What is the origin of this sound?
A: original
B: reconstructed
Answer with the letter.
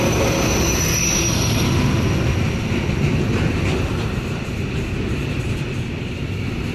A